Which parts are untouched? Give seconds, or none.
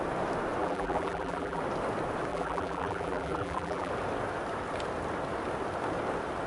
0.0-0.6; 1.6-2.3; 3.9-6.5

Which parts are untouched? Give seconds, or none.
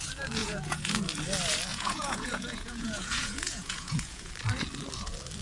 0.0-0.4; 1.0-1.7; 4.3-5.4